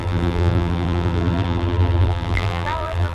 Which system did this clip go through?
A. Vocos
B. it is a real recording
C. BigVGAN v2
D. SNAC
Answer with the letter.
C